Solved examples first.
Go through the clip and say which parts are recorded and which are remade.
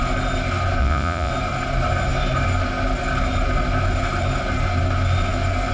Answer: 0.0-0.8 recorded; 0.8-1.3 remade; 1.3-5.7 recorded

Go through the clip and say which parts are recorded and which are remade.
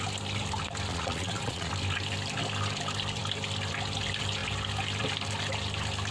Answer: 0.0-0.9 recorded; 0.9-1.7 remade; 1.7-6.1 recorded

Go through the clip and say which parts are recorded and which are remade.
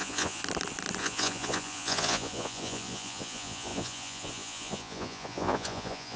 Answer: 0.0-0.4 remade; 0.4-1.0 recorded; 1.0-6.2 remade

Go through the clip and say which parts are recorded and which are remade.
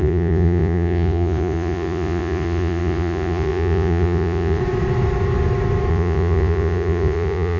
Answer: 0.0-4.6 remade; 4.6-5.9 recorded; 5.9-7.6 remade